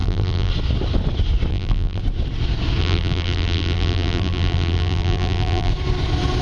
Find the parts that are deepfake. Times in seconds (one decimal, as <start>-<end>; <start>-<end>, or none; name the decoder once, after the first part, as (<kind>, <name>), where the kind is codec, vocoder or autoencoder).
0.0-0.5 (vocoder, BigVGAN v2); 1.5-2.0; 2.8-5.7